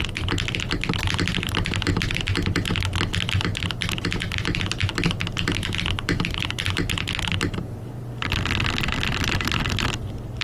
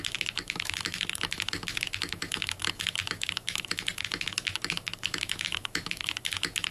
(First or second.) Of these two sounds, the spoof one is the second